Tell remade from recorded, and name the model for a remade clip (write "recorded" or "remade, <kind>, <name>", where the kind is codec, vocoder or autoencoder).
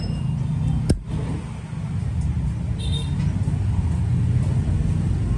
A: recorded